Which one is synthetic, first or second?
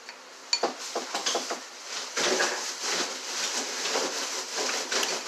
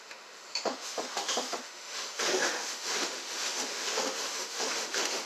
second